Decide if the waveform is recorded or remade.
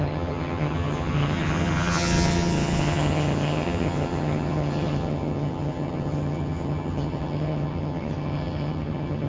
remade